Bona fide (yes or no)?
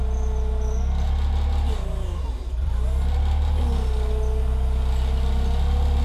yes